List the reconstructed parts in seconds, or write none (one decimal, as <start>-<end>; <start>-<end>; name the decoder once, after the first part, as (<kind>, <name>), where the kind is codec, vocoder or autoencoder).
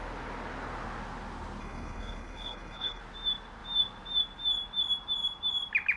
1.6-3.0 (codec, HILCodec)